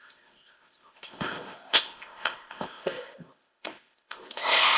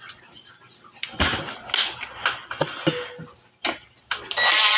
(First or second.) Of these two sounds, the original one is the second